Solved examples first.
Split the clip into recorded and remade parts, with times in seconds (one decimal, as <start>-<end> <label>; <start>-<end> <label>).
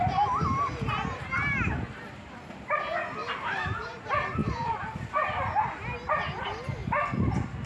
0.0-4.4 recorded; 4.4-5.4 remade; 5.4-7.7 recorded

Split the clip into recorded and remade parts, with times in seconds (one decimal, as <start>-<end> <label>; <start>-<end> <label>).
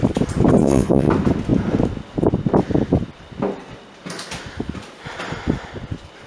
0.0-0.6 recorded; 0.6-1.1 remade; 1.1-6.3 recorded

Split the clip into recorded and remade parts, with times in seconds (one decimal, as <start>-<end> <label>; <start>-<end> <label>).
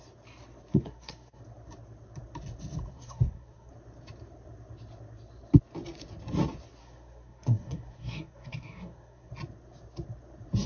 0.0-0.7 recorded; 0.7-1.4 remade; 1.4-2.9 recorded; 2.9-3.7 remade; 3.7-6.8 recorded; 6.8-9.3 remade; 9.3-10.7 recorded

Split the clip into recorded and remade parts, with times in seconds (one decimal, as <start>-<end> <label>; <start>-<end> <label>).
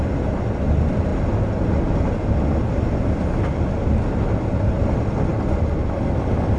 0.0-6.6 recorded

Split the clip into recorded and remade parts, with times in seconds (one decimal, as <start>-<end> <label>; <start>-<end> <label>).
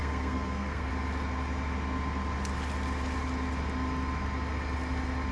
0.0-0.9 remade; 0.9-5.3 recorded